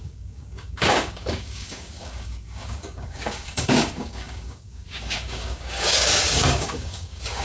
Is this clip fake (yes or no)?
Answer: yes